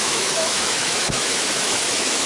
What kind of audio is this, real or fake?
fake